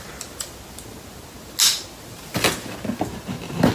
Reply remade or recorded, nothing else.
recorded